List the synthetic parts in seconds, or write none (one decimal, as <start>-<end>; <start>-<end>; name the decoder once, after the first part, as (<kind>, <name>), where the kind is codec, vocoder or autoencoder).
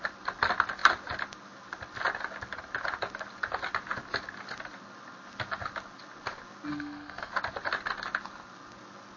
6.7-7.3 (codec, SNAC)